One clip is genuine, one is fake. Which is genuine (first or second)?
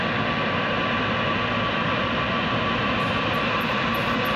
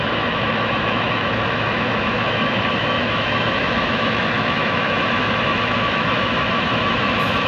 first